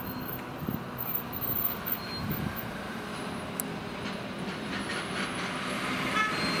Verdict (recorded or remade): recorded